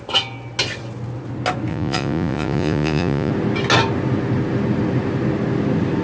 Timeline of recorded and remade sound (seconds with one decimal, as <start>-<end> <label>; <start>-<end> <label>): 0.0-1.7 recorded; 1.7-3.3 remade; 3.3-6.0 recorded